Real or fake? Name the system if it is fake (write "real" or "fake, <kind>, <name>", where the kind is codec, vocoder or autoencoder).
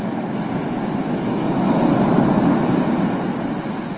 real